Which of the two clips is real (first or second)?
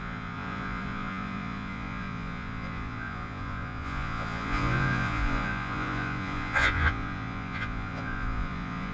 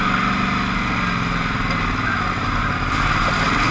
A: second